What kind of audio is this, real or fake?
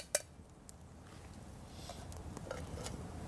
real